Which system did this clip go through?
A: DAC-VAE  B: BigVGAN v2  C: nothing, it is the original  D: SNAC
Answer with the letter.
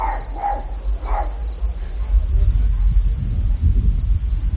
C